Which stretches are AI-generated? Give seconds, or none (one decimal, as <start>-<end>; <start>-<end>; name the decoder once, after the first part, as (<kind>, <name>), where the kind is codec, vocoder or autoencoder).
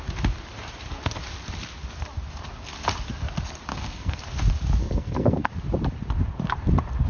3.7-4.2 (codec, SNAC); 4.8-5.5